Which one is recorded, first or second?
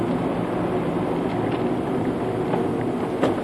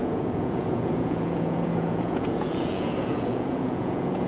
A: first